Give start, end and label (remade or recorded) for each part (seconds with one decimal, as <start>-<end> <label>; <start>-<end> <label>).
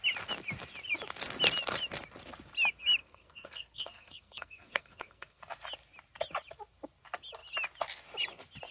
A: 0.0-3.0 recorded; 3.0-5.4 remade; 5.4-8.7 recorded